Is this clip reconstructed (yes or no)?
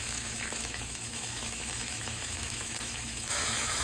yes